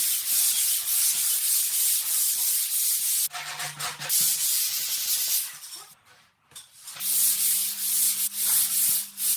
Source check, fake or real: real